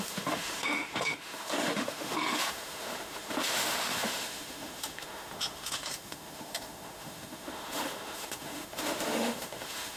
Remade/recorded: remade